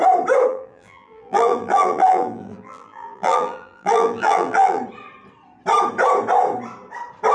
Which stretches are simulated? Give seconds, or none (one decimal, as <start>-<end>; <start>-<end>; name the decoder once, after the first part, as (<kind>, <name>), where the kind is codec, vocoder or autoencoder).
0.5-4.8 (vocoder, BigVGAN v2)